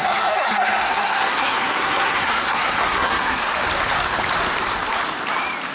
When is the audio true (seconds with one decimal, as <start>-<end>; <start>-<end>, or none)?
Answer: 3.4-5.7